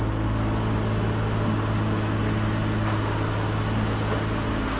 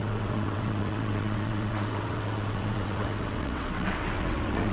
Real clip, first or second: first